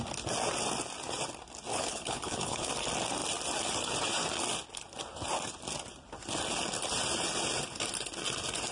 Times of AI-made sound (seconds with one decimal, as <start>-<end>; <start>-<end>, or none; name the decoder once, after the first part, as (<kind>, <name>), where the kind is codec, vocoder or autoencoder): 1.7-2.7 (codec, HILCodec)